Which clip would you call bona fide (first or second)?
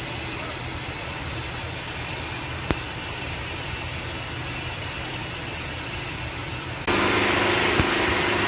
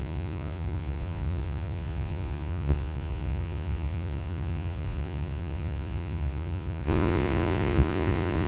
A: first